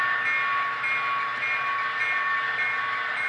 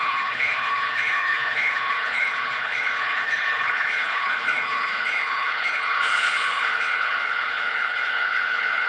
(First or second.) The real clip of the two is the first